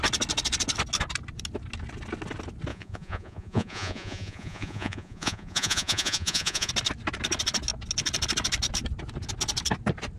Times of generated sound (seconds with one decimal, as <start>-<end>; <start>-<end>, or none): 2.7-6.7